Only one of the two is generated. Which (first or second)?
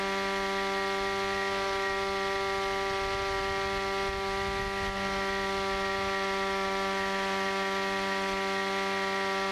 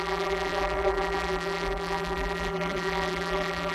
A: second